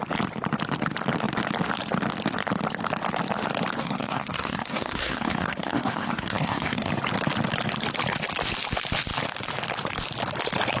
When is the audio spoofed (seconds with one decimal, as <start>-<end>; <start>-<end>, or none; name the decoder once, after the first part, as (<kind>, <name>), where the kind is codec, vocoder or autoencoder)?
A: 3.8-6.9 (codec, SNAC)